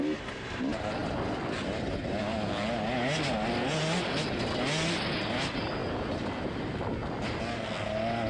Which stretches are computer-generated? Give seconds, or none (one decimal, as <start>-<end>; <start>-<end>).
1.0-2.0; 5.8-7.4